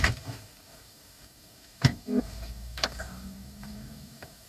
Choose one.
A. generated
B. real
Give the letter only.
A